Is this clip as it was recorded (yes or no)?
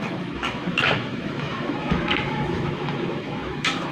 no